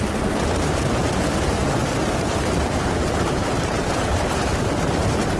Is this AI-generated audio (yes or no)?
yes